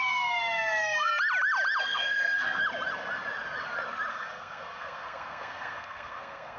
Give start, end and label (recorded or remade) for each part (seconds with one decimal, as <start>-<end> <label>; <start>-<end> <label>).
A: 0.0-1.1 remade; 1.1-1.8 recorded; 1.8-2.6 remade; 2.6-4.1 recorded; 4.1-6.6 remade